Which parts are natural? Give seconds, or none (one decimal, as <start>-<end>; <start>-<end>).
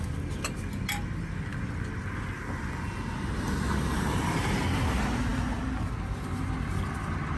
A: 0.0-7.4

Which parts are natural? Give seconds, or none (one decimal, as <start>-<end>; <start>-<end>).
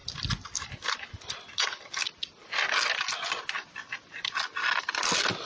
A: 0.0-5.5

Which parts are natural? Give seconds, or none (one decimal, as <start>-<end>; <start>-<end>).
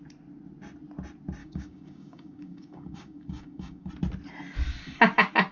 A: 0.0-1.4; 3.9-5.5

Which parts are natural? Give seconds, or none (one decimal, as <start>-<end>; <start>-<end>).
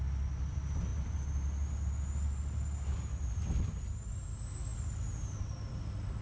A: 0.0-6.2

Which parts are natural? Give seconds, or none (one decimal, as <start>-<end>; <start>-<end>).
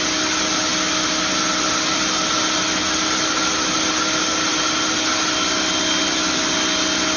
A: 0.0-7.2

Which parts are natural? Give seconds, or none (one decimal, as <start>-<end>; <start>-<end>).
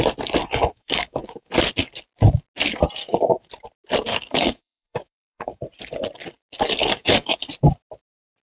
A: 0.0-0.4; 1.5-3.0; 3.5-4.1; 5.6-6.8; 7.4-8.4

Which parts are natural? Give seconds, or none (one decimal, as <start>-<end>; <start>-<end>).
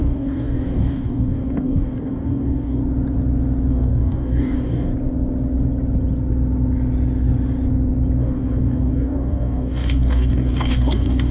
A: 2.8-3.7; 4.9-8.2